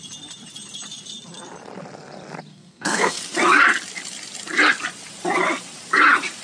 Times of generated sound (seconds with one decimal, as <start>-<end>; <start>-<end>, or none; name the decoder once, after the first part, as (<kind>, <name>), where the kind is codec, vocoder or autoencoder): 2.5-3.2 (codec, SNAC)